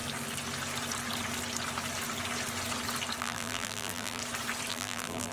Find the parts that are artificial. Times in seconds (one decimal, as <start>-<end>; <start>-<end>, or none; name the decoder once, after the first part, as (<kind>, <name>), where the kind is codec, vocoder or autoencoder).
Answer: 3.2-4.2 (vocoder, BigVGAN v2); 4.7-5.3